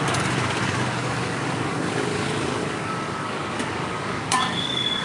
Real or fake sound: fake